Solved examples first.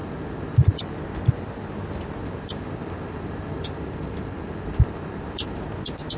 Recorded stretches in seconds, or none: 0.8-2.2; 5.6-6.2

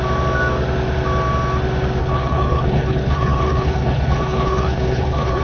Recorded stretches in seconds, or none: 0.0-2.0